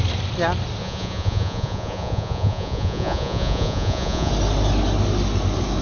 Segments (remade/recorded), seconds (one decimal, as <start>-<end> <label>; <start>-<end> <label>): 0.0-0.8 recorded; 0.8-4.3 remade; 4.3-5.8 recorded